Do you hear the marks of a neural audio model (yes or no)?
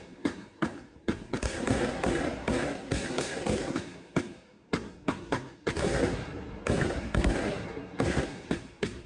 yes